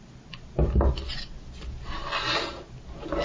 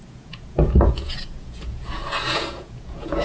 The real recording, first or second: first